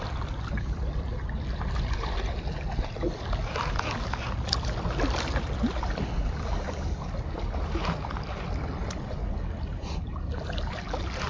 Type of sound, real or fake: real